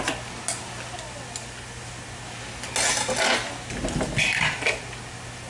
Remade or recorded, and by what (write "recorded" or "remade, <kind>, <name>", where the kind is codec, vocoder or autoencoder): recorded